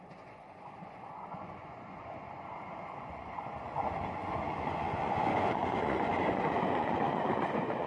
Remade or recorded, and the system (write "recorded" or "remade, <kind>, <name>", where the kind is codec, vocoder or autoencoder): remade, vocoder, Vocos